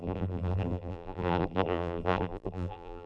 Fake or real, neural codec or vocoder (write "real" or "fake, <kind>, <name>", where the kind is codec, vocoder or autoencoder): fake, vocoder, BigVGAN v2